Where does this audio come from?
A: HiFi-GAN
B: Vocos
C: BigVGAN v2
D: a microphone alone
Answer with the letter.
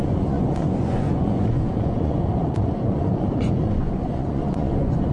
B